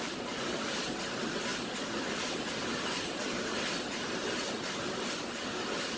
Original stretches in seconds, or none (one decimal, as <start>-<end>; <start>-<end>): 0.0-6.0